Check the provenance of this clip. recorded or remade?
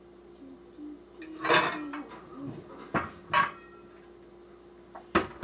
recorded